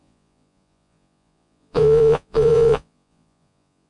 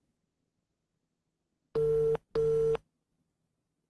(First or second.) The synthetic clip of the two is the first